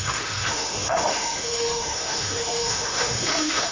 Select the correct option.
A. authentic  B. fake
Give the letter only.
B